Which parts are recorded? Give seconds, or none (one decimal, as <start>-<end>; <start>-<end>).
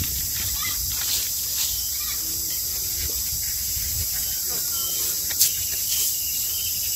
0.0-2.8; 6.3-7.0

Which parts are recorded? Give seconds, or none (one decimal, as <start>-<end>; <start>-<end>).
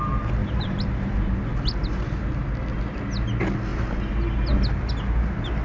0.0-0.4; 1.3-5.6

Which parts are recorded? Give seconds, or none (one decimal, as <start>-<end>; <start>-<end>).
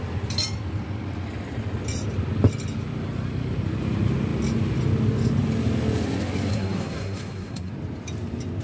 0.0-6.5; 7.7-8.6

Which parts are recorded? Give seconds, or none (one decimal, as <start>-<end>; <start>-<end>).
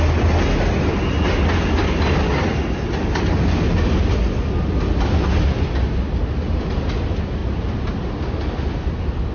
0.0-9.3